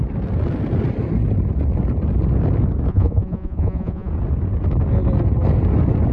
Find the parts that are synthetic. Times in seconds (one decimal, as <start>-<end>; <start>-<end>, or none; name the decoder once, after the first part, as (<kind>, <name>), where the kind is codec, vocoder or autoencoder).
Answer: 2.9-4.1 (vocoder, Vocos)